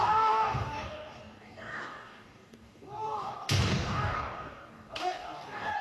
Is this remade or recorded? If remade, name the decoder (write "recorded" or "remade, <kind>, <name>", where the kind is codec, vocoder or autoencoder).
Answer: remade, codec, DAC